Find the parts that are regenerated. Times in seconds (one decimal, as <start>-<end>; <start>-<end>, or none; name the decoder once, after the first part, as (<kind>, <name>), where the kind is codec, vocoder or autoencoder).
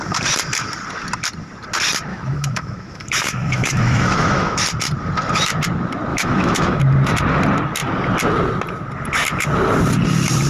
2.1-4.6 (autoencoder, DAC-VAE); 6.1-6.8